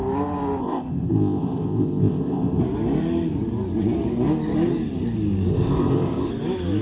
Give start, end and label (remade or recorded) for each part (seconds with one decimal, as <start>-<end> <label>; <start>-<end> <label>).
0.0-0.6 recorded; 0.6-2.6 remade; 2.6-5.5 recorded; 5.5-6.3 remade; 6.3-6.8 recorded